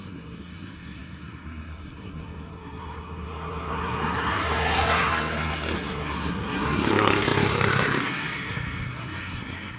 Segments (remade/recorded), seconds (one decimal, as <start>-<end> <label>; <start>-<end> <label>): 0.0-9.8 remade